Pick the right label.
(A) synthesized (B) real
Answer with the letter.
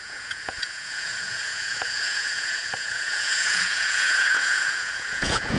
A